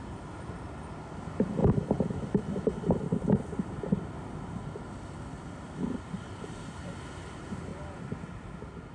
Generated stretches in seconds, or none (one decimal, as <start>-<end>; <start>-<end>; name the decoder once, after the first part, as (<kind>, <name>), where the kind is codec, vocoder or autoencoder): 1.6-6.8 (vocoder, BigVGAN v2); 7.7-8.9